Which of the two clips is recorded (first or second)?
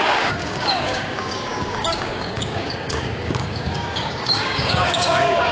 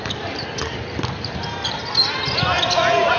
second